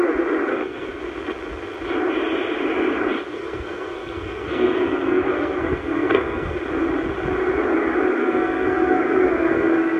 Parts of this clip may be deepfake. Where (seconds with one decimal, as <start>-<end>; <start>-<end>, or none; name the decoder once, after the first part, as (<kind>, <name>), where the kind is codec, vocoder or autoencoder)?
0.5-1.0 (codec, SNAC); 3.3-6.6; 8.2-10.0